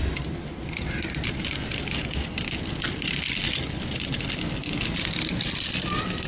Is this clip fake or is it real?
fake